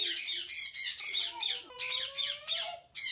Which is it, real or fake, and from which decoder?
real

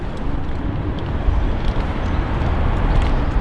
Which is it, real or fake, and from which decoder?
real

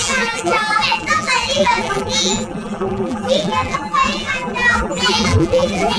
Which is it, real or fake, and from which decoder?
fake, vocoder, BigVGAN v2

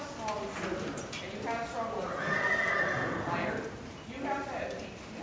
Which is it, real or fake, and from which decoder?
real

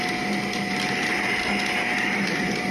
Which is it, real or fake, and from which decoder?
real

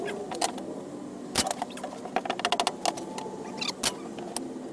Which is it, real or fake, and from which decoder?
real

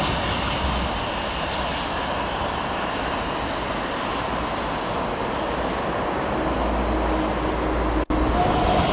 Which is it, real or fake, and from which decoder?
real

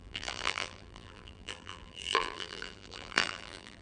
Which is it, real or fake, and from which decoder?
fake, vocoder, BigVGAN v2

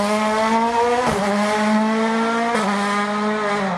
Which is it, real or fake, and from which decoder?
real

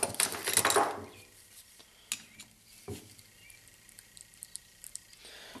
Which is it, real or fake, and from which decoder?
real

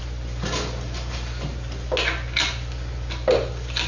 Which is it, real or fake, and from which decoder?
real